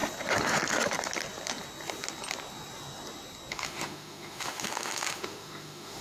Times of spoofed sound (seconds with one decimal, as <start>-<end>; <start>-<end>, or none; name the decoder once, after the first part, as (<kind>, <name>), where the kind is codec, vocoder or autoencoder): 3.5-6.0 (autoencoder, DAC-VAE)